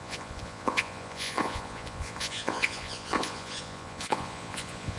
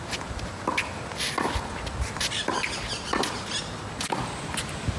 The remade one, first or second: first